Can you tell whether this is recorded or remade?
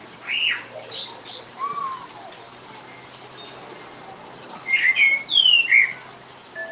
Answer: recorded